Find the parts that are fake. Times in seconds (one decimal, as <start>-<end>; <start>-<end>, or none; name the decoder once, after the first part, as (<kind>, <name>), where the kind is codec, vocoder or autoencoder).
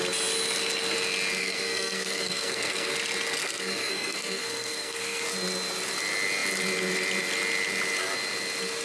1.4-2.9 (codec, SNAC); 3.4-5.2